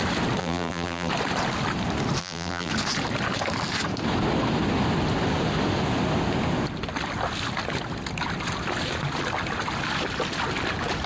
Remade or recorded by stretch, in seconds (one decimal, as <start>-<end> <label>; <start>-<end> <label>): 0.0-0.4 recorded; 0.4-1.1 remade; 1.1-2.2 recorded; 2.2-2.7 remade; 2.7-11.1 recorded